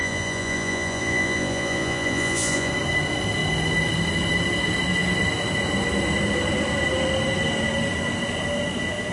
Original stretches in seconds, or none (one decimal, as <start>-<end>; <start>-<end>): 2.7-9.1